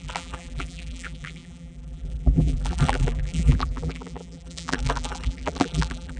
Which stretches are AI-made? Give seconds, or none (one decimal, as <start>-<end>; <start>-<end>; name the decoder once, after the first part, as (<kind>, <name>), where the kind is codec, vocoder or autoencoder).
0.0-6.2 (vocoder, BigVGAN v2)